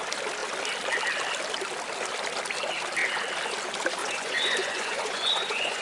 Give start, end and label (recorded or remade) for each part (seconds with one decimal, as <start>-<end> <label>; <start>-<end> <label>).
0.0-4.0 recorded; 4.0-5.8 remade